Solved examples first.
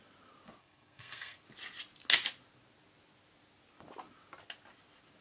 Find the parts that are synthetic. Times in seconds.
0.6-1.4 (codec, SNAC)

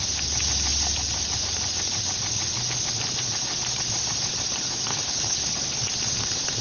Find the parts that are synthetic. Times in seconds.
4.9-5.8 (codec, HILCodec)

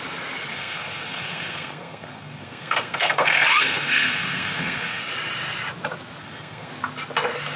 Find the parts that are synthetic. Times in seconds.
0.5-5.1 (codec, SNAC); 6.2-6.7

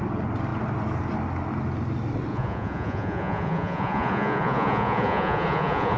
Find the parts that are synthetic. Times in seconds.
2.3-6.0 (vocoder, Vocos)

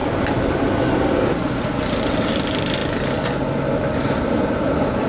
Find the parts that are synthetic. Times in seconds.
0.0-2.8 (vocoder, BigVGAN v2); 4.2-5.1

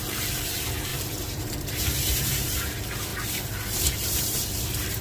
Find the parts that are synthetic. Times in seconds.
0.0-5.0 (vocoder, BigVGAN v2)

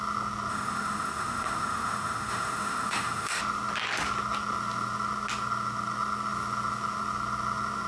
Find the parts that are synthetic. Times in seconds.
0.5-3.4 (autoencoder, DAC-VAE)